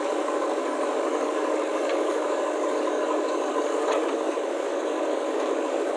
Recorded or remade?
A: remade